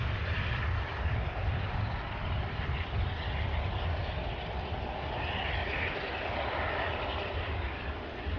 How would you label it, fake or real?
real